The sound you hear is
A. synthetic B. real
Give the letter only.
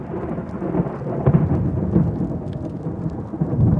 B